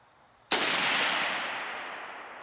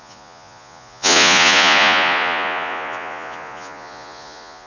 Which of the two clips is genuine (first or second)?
first